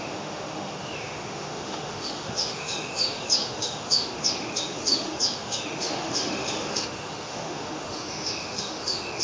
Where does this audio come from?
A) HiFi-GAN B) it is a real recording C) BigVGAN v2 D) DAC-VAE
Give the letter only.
D